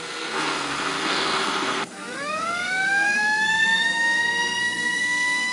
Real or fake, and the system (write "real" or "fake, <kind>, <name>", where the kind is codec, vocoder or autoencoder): fake, codec, SNAC